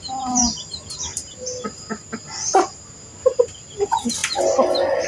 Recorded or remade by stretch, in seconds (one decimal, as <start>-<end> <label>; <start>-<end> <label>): 0.0-5.1 recorded